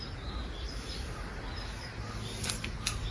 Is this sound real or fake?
real